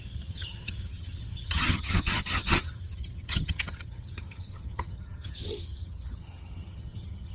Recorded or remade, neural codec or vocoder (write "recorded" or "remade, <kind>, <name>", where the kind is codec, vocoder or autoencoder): remade, vocoder, HiFi-GAN